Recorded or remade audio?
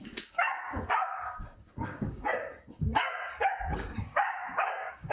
remade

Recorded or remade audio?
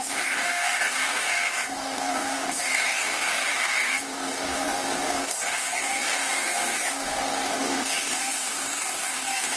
remade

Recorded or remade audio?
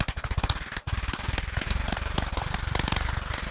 recorded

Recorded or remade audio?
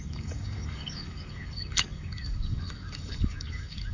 remade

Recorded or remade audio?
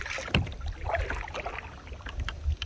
recorded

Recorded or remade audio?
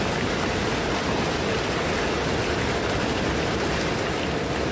recorded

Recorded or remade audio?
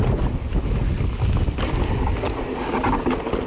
recorded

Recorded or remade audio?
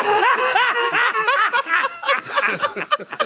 remade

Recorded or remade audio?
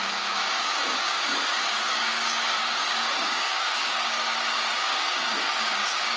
remade